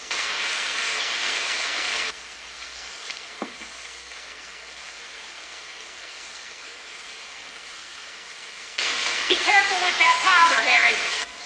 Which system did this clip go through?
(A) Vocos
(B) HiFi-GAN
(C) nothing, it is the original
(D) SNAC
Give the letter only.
D